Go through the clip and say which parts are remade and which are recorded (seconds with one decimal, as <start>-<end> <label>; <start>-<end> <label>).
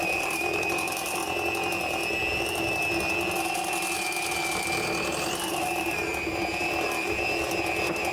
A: 0.0-1.2 remade; 1.2-5.5 recorded; 5.5-6.1 remade; 6.1-8.1 recorded